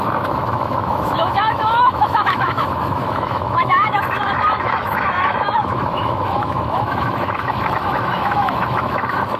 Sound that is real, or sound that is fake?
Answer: fake